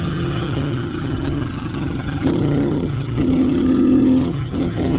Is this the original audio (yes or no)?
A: no